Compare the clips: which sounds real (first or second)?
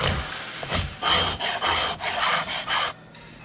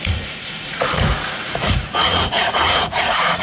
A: first